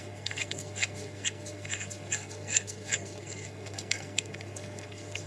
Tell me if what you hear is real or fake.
fake